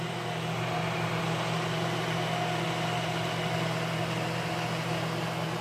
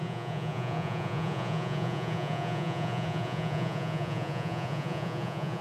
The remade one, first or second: second